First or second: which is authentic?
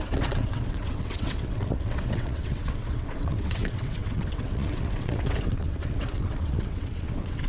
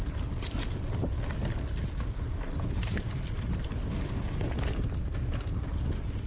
second